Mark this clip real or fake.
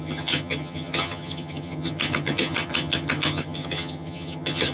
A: fake